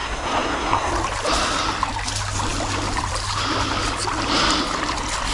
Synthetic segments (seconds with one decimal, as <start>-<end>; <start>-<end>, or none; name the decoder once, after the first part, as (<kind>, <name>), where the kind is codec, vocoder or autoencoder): 0.0-0.9 (codec, SNAC)